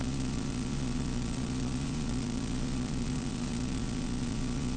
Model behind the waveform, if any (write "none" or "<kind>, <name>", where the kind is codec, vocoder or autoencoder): vocoder, Vocos